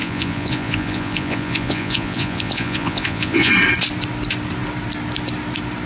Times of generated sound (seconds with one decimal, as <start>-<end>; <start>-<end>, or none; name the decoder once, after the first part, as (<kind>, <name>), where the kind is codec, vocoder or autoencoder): 0.0-3.5 (vocoder, Vocos)